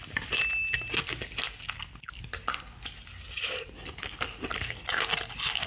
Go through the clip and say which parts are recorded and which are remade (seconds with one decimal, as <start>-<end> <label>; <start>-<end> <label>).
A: 0.0-5.7 recorded